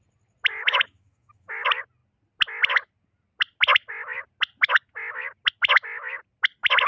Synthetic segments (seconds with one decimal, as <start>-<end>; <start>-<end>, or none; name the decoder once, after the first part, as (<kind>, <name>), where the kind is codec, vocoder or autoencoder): 0.6-1.6 (autoencoder, DAC-VAE)